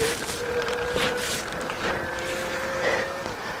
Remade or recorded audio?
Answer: remade